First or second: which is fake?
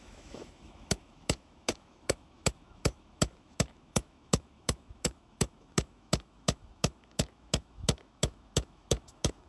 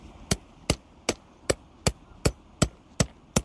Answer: first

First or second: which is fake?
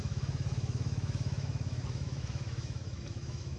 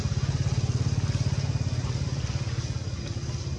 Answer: first